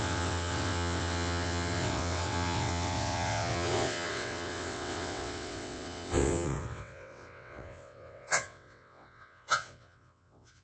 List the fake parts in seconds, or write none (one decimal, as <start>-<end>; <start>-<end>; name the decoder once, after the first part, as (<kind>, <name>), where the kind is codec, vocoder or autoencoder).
0.0-10.6 (vocoder, WaveNeXt)